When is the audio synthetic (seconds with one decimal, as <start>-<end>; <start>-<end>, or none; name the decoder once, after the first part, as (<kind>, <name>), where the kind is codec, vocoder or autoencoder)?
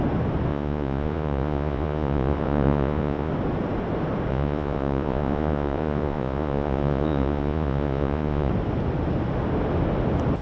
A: 0.5-3.3 (vocoder, Vocos); 4.3-8.5